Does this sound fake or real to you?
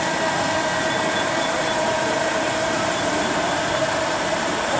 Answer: fake